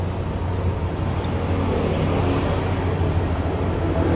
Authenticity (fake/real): real